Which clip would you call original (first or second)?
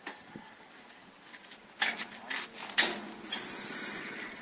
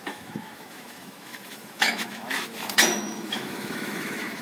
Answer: first